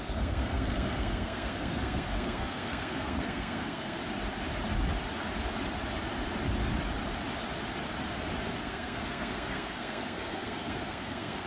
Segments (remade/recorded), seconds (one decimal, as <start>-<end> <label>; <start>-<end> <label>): 0.0-4.0 remade; 4.0-8.6 recorded; 8.6-11.5 remade